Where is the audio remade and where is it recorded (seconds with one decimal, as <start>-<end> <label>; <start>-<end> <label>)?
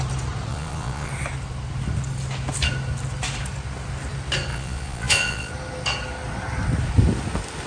0.0-0.5 recorded; 0.5-1.1 remade; 1.1-4.5 recorded; 4.5-5.5 remade; 5.5-7.7 recorded